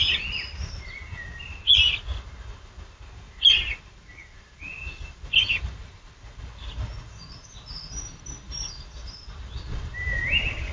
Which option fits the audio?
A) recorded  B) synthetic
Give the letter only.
A